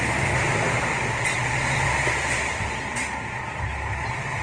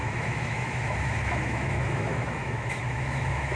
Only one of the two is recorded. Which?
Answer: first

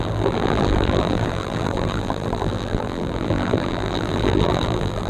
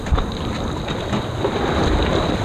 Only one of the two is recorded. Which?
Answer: second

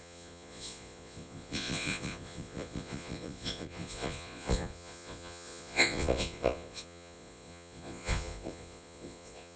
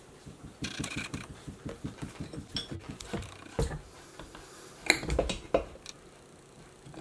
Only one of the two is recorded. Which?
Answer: second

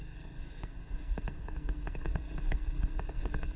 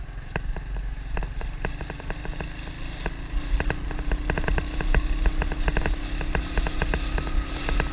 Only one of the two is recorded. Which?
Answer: second